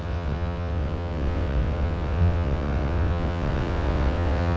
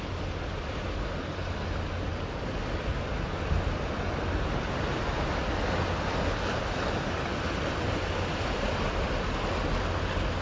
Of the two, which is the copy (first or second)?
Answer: first